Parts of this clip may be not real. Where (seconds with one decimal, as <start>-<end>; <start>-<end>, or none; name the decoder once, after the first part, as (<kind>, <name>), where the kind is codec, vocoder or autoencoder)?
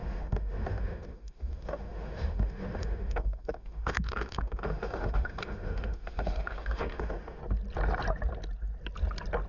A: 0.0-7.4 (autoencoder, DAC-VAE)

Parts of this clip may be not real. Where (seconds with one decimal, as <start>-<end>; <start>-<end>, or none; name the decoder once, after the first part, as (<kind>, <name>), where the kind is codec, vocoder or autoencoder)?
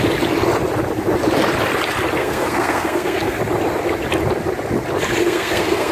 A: 2.2-3.4 (codec, SNAC); 5.2-5.9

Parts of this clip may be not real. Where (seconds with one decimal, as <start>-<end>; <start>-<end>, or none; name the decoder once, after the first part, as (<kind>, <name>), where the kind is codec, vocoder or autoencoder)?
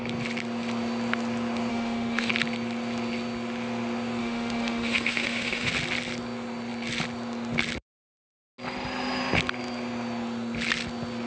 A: 1.7-2.3 (autoencoder, DAC-VAE); 4.2-5.7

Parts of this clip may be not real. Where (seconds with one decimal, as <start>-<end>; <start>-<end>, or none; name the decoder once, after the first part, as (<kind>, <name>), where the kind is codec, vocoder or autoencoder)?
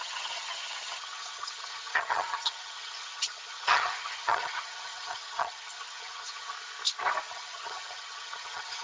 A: 0.0-6.5 (vocoder, HiFi-GAN); 7.3-8.8